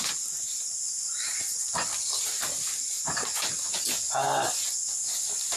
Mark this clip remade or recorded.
recorded